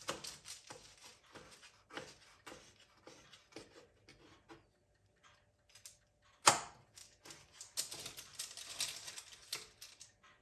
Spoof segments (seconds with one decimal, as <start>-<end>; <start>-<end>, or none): none

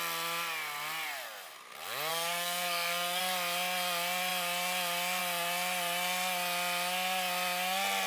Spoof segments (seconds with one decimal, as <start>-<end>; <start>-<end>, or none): 2.1-3.2

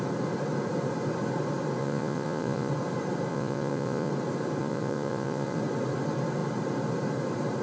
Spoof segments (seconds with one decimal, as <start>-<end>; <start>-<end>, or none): 1.8-2.7; 3.3-4.1; 4.6-5.6

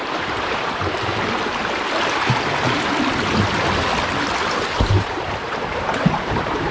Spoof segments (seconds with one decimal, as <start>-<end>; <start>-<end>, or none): 0.0-0.8; 4.8-6.7

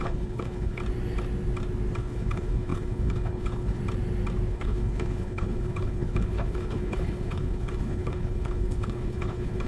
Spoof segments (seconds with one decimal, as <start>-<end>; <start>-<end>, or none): 0.0-0.8; 2.0-3.8; 4.5-9.7

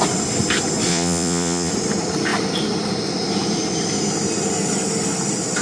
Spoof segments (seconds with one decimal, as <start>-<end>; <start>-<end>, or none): 0.9-1.7

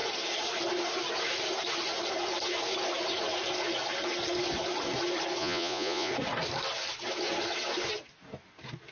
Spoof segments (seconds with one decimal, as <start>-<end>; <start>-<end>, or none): 5.4-6.1